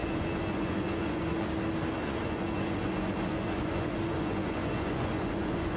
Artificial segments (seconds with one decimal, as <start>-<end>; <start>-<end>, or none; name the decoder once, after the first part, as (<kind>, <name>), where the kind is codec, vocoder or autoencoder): 0.0-1.5 (vocoder, Vocos); 2.0-5.8